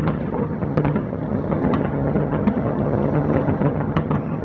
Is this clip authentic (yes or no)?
no